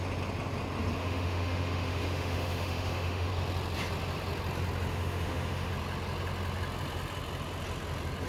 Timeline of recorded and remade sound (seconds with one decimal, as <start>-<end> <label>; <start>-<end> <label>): 0.0-1.0 recorded; 1.0-3.3 remade; 3.3-4.9 recorded; 4.9-5.7 remade; 5.7-8.3 recorded